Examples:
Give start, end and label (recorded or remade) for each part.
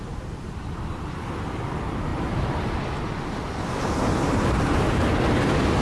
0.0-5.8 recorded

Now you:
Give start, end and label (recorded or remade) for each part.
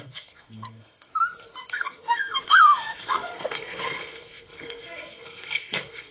0.0-1.1 remade; 1.1-1.7 recorded; 1.7-6.1 remade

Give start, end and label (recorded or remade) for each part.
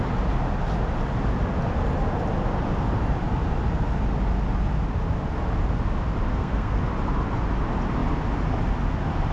0.0-6.3 recorded; 6.3-6.8 remade; 6.8-9.3 recorded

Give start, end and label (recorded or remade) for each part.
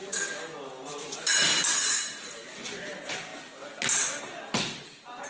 0.0-5.3 recorded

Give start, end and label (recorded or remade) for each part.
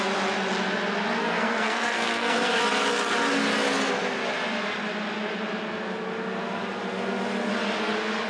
0.0-1.2 recorded; 1.2-2.6 remade; 2.6-8.3 recorded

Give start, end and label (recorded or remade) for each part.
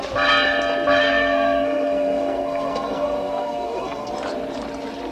0.0-1.0 recorded; 1.0-4.1 remade; 4.1-5.1 recorded